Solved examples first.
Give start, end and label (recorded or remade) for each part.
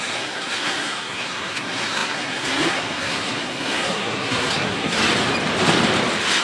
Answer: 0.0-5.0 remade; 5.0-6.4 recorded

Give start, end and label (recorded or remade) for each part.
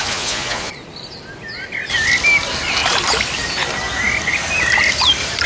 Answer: 0.0-0.7 remade; 0.7-5.5 recorded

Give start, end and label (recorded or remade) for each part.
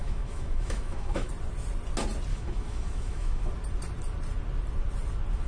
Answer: 0.0-1.3 remade; 1.3-2.3 recorded; 2.3-3.5 remade; 3.5-5.5 recorded